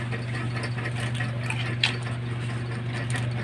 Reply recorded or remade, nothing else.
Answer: recorded